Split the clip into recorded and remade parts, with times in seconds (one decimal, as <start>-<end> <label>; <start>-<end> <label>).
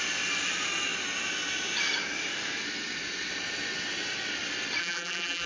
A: 0.0-4.8 recorded; 4.8-5.5 remade